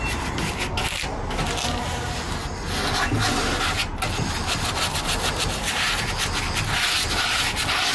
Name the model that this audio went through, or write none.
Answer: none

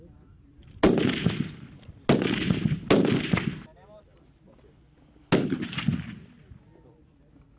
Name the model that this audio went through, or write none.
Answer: none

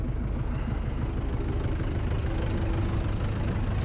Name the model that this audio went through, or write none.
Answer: none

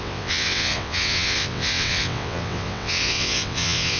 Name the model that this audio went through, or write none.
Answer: vocoder, WaveNeXt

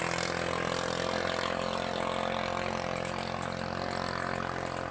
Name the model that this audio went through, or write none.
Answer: none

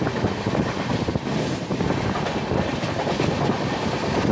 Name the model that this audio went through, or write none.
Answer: none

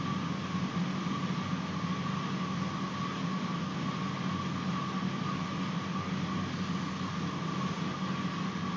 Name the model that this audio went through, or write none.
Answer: none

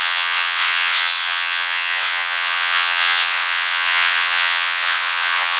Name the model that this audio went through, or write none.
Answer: vocoder, WaveNeXt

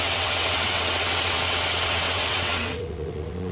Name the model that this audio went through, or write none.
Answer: vocoder, WaveNeXt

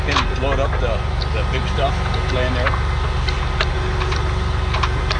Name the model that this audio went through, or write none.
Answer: none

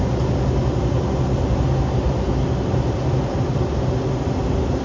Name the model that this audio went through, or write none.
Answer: none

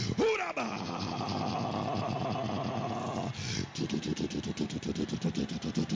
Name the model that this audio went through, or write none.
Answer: none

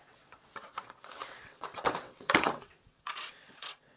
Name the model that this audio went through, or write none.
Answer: vocoder, WaveNeXt